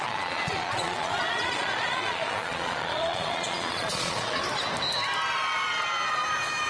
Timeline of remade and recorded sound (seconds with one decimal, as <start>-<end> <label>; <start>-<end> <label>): 0.0-4.4 remade; 4.4-6.7 recorded